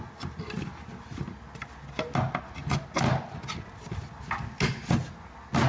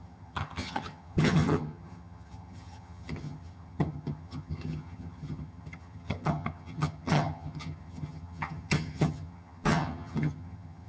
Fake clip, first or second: second